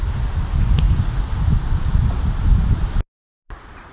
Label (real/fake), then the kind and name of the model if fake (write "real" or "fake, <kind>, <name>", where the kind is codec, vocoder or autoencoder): real